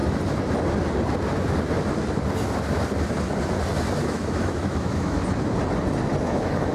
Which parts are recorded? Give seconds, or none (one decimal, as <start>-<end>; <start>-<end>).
0.0-4.0; 5.2-6.2

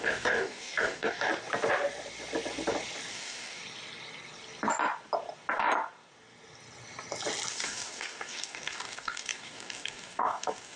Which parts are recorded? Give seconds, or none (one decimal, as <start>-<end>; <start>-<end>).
1.3-3.1; 3.6-7.5

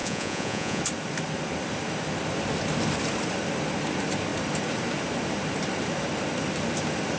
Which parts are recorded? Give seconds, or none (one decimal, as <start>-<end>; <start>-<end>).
0.8-7.2

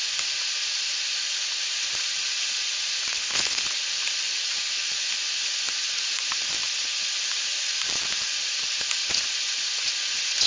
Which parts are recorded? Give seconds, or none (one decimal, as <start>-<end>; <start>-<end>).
0.0-3.1; 3.6-10.5

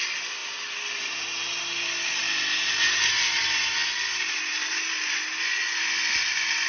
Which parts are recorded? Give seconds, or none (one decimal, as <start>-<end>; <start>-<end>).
0.0-6.7

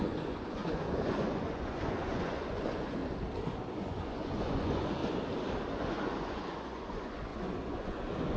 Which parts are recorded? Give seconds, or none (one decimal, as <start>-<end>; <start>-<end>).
3.0-3.7; 5.0-5.7